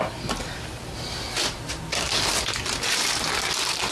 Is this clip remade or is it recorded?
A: recorded